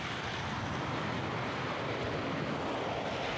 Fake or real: real